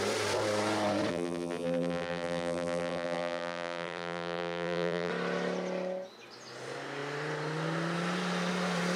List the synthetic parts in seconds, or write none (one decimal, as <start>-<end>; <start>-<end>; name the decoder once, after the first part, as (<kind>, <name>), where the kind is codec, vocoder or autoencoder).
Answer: 1.1-5.1 (vocoder, BigVGAN v2)